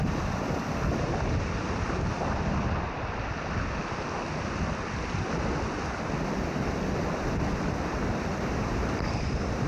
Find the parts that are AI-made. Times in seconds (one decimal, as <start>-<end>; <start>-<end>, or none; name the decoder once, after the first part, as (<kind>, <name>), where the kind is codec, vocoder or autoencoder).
8.3-9.7 (vocoder, BigVGAN v2)